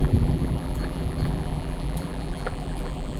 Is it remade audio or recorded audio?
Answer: remade